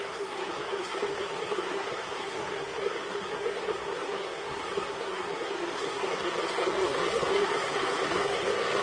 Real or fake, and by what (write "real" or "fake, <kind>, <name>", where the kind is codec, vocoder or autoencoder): fake, codec, SNAC